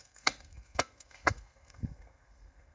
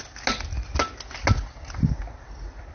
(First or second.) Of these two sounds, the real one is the second